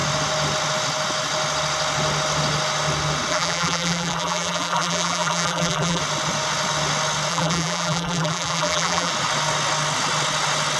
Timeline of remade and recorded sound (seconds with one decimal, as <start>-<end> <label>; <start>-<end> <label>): 0.0-3.3 recorded; 3.3-6.0 remade; 6.0-7.3 recorded; 7.3-9.1 remade; 9.1-10.8 recorded